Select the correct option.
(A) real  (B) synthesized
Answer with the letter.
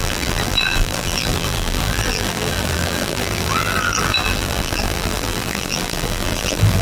B